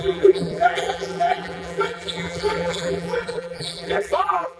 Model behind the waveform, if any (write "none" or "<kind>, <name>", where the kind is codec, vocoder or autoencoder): vocoder, BigVGAN v2